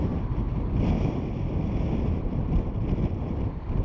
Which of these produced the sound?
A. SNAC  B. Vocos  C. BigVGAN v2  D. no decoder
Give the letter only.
D